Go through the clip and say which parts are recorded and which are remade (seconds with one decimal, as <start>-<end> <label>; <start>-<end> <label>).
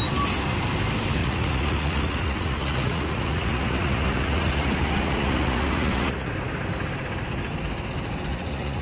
0.0-1.2 recorded; 1.2-6.3 remade; 6.3-8.3 recorded; 8.3-8.8 remade